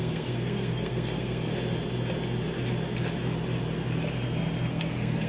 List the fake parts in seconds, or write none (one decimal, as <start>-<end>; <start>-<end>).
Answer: 0.0-1.5; 4.7-5.3